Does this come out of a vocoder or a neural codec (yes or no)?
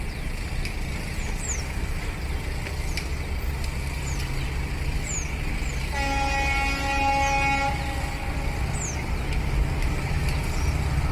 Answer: no